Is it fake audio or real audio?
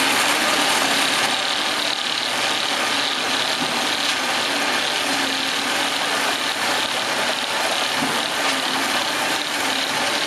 real